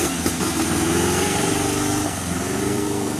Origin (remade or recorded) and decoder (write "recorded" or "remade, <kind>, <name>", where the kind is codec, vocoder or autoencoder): remade, codec, SNAC